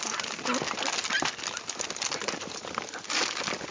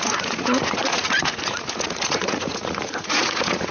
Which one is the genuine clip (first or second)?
first